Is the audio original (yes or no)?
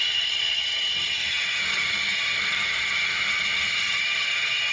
no